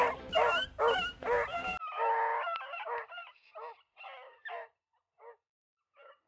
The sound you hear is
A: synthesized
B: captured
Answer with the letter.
B